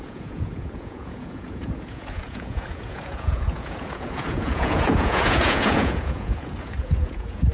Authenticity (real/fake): fake